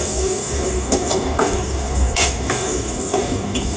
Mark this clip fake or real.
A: fake